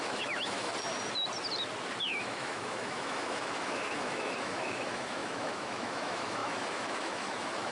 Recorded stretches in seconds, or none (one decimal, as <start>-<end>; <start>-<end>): 0.7-2.0